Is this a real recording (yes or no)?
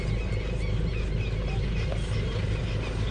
yes